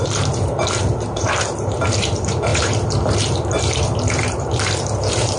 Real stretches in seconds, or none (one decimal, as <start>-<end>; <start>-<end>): none